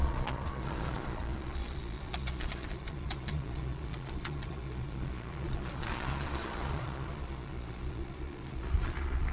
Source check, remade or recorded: remade